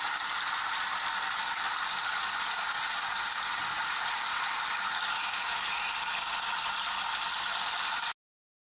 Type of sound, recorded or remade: recorded